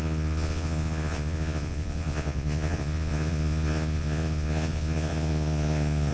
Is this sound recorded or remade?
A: remade